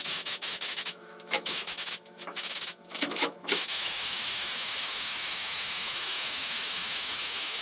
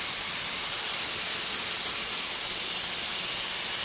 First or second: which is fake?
first